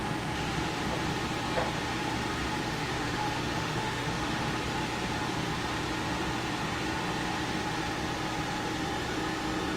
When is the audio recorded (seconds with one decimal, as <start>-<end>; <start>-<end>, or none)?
0.0-2.6; 4.5-9.8